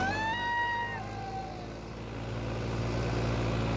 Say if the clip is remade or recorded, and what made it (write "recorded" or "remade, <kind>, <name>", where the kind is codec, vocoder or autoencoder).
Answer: recorded